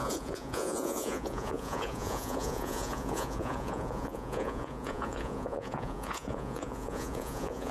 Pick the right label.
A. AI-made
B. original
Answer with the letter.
A